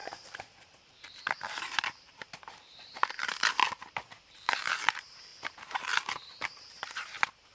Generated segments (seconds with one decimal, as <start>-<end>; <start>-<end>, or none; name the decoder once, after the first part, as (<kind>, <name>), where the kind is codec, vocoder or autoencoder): 0.0-3.6 (vocoder, BigVGAN v2); 4.3-7.5

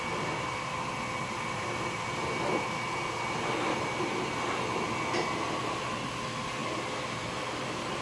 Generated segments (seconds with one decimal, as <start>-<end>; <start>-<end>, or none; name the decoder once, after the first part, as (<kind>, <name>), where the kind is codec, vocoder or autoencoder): none

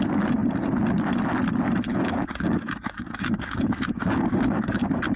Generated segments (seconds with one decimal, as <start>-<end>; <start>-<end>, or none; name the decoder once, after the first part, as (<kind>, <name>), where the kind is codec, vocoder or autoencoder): 1.9-4.8 (codec, DAC)